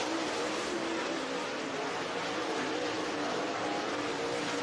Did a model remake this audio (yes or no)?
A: no